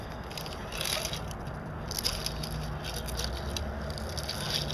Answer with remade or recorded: recorded